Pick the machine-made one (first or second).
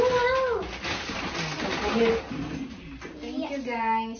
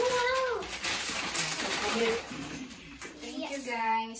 second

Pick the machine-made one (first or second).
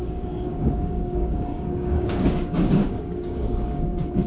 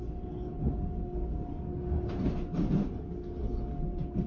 first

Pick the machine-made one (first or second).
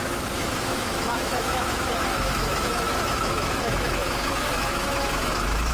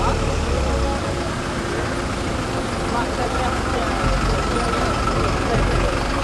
first